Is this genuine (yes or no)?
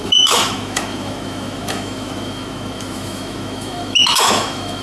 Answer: no